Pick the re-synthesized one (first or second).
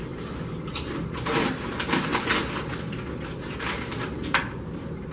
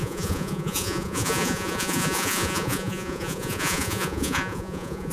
second